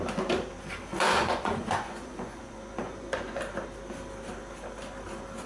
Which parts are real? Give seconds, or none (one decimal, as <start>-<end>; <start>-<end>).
0.0-0.9; 3.4-5.5